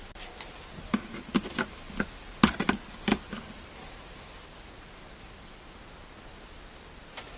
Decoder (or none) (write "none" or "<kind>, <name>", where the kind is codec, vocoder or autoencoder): none